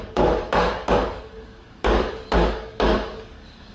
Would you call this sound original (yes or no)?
no